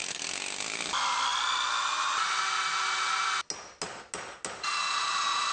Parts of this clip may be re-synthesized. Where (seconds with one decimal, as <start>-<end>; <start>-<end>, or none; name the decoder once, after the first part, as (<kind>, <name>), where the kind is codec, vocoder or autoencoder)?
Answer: 0.0-0.9 (codec, DAC)